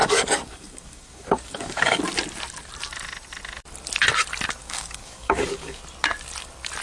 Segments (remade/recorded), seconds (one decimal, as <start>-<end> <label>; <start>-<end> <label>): 0.0-2.0 remade; 2.0-4.6 recorded; 4.6-5.8 remade; 5.8-6.8 recorded